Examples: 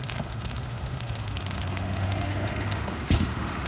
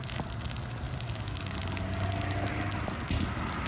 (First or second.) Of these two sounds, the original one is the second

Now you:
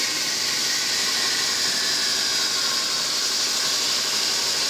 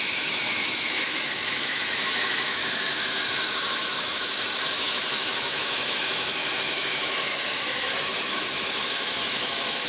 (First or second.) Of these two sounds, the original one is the first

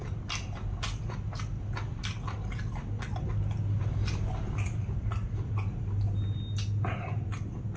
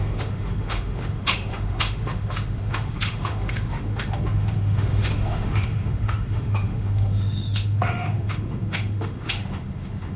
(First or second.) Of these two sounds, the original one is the first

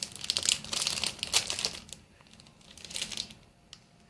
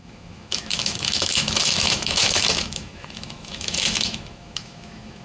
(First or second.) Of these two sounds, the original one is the first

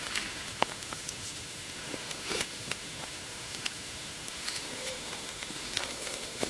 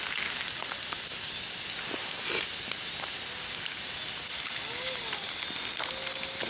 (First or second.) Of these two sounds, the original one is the second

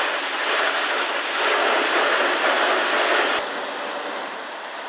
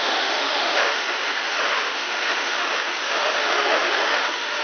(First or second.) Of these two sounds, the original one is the first